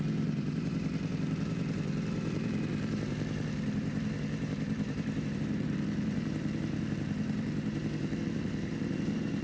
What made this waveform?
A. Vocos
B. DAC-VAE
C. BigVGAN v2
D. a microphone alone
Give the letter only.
C